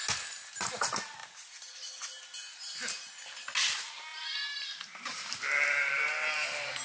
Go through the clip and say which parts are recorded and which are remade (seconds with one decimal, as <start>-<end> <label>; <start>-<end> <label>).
0.0-1.2 recorded; 1.2-2.2 remade; 2.2-4.1 recorded; 4.1-5.0 remade; 5.0-6.8 recorded